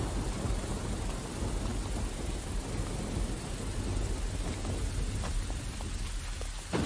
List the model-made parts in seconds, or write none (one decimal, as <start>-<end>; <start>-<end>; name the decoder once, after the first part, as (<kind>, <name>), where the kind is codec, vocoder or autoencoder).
none